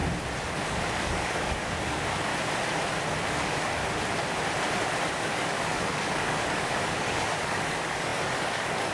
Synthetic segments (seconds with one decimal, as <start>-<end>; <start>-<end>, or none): 0.5-2.3; 3.3-3.8; 5.1-8.9